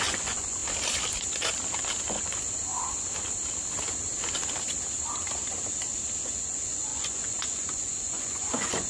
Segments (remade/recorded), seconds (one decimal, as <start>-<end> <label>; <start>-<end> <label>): 0.0-0.6 remade; 0.6-2.1 recorded; 2.1-2.7 remade; 2.7-6.3 recorded; 6.3-8.9 remade